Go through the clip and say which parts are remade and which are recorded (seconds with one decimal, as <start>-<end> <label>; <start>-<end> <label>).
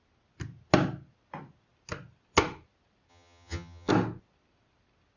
0.0-3.1 recorded; 3.1-3.9 remade; 3.9-5.2 recorded